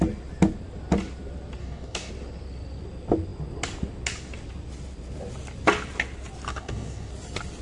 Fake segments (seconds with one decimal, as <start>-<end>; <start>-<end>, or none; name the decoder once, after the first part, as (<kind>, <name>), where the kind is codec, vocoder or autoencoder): 1.6-2.1 (codec, DAC); 6.5-7.1